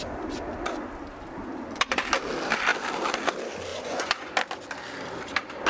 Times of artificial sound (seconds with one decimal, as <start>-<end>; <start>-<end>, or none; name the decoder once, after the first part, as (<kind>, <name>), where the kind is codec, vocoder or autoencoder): 3.7-4.3 (vocoder, Vocos)